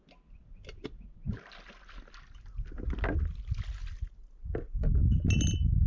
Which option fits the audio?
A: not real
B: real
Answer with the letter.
B